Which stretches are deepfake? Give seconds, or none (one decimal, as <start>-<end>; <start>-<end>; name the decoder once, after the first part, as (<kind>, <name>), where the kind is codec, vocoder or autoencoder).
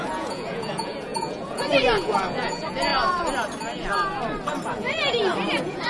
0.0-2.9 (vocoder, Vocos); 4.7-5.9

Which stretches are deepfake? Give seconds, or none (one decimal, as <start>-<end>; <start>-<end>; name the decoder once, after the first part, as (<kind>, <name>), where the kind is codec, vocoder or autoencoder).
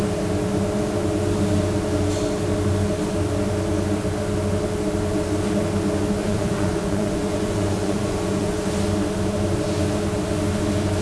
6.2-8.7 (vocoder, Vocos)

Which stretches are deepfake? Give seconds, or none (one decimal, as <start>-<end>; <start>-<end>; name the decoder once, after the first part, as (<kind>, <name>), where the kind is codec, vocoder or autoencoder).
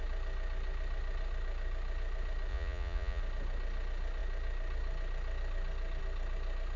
2.5-3.2 (vocoder, Vocos)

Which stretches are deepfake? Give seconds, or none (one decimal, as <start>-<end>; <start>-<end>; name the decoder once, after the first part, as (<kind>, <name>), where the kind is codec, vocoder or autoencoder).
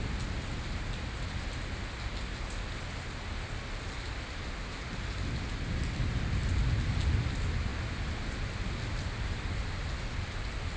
none